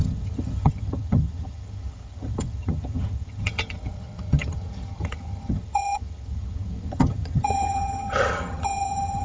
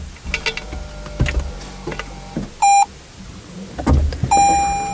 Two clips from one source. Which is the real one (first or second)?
second